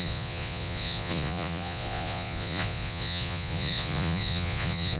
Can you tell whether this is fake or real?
fake